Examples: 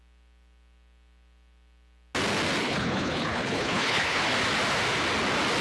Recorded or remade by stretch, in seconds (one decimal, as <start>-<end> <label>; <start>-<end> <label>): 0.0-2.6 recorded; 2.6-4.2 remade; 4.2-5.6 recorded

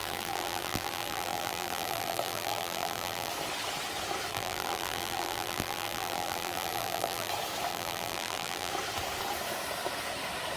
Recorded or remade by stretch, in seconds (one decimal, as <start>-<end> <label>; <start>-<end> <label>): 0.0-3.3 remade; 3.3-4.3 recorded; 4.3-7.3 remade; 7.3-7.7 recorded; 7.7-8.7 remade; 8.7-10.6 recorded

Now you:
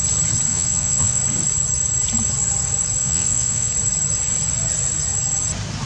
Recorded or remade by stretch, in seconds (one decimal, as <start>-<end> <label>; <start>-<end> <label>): 0.0-0.5 recorded; 0.5-1.2 remade; 1.2-3.0 recorded; 3.0-3.7 remade; 3.7-5.9 recorded